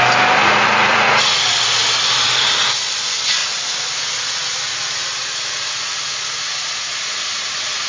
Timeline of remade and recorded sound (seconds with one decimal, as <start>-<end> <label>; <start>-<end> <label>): 0.0-0.4 recorded; 0.4-1.4 remade; 1.4-3.4 recorded; 3.4-7.9 remade